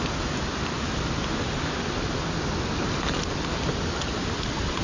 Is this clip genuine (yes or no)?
yes